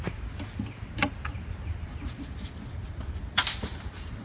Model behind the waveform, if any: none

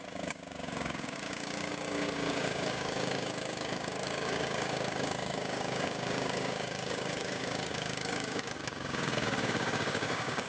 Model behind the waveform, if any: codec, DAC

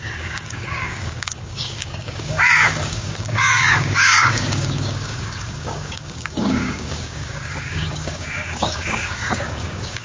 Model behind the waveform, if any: codec, DAC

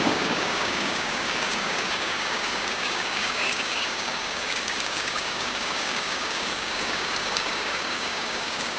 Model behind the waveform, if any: codec, DAC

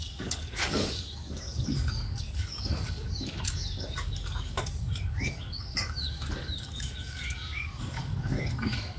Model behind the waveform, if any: codec, DAC